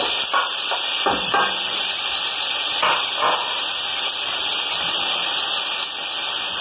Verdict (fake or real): real